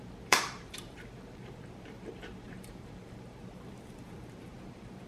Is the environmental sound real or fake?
fake